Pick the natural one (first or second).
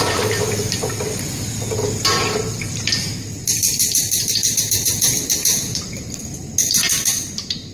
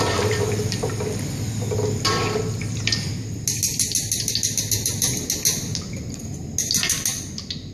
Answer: second